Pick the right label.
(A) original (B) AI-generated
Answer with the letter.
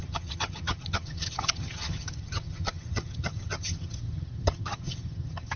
B